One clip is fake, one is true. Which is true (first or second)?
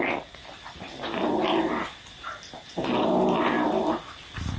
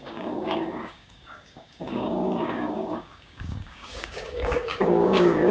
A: first